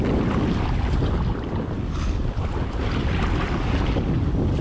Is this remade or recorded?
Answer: recorded